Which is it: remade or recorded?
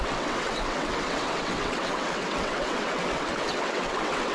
remade